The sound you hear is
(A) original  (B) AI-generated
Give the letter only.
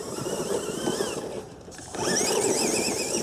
B